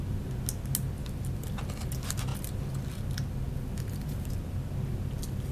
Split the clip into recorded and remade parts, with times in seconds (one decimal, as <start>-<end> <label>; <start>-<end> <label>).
0.0-5.5 recorded